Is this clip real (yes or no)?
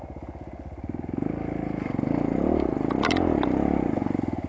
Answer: yes